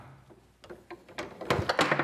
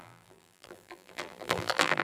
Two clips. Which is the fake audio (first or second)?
second